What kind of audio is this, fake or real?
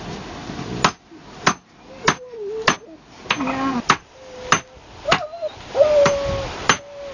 real